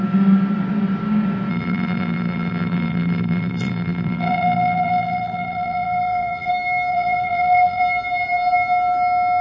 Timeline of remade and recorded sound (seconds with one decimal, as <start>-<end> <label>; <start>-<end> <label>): 0.0-1.5 recorded; 1.5-6.5 remade; 6.5-6.9 recorded; 6.9-7.8 remade; 7.8-9.4 recorded